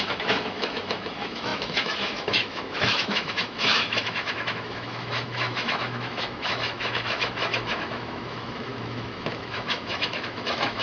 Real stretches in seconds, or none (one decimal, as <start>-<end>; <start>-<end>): none